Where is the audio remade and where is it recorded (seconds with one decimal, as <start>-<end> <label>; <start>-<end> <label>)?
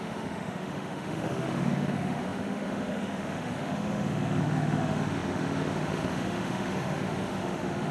0.0-7.9 remade